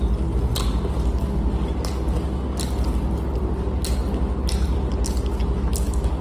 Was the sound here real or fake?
real